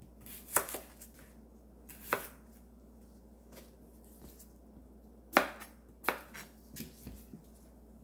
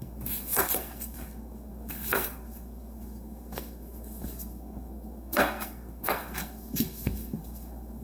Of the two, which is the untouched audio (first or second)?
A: first